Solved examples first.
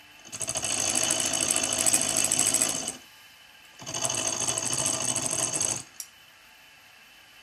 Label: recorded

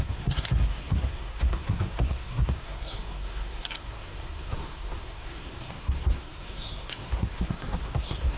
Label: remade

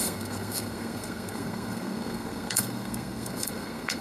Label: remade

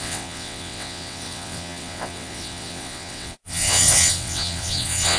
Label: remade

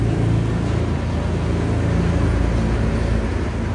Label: recorded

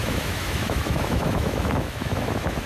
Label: remade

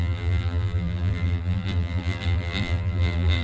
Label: remade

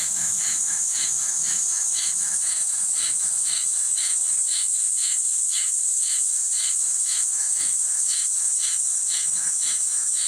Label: remade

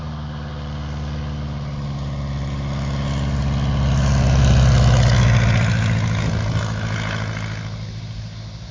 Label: recorded